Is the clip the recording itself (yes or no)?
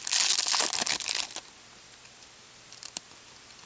yes